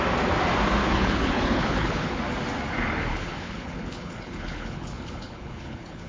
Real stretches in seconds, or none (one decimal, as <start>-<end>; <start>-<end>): 0.0-0.8; 2.2-3.1